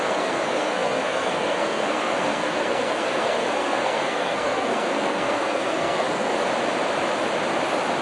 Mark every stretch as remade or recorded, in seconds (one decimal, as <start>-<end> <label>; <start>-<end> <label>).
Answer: 0.0-6.3 remade; 6.3-8.0 recorded

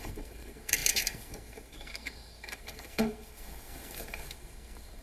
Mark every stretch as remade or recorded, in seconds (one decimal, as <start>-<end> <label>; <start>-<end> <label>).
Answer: 0.0-5.0 remade

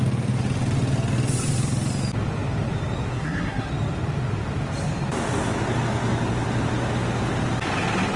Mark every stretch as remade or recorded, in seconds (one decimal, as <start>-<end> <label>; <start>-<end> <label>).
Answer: 0.0-3.1 recorded; 3.1-3.7 remade; 3.7-8.2 recorded

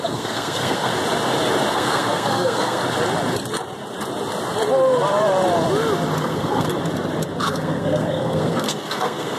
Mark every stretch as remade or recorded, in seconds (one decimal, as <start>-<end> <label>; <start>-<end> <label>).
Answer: 0.0-0.9 remade; 0.9-1.7 recorded; 1.7-2.8 remade; 2.8-6.2 recorded; 6.2-6.7 remade; 6.7-7.4 recorded; 7.4-9.4 remade

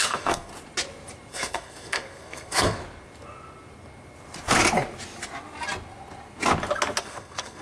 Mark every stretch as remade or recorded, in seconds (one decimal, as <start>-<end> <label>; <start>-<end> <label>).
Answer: 0.0-0.5 remade; 0.5-1.3 recorded; 1.3-2.8 remade; 2.8-7.0 recorded; 7.0-7.6 remade

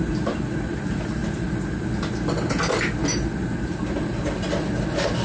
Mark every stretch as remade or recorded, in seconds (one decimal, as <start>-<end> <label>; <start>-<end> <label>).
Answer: 0.0-5.2 recorded

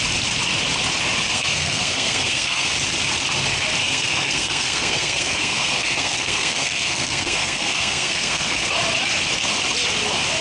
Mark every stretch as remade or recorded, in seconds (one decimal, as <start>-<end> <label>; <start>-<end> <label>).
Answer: 0.0-1.3 recorded; 1.3-2.7 remade; 2.7-3.8 recorded; 3.8-8.7 remade; 8.7-10.4 recorded

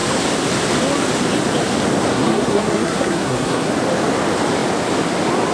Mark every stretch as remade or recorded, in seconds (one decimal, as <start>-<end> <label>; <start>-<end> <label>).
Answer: 0.0-2.1 recorded; 2.1-3.7 remade; 3.7-5.5 recorded